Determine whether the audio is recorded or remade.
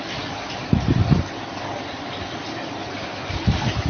recorded